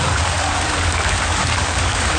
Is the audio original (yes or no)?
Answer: no